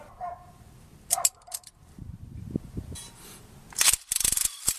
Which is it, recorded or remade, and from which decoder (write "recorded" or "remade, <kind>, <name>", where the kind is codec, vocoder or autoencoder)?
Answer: recorded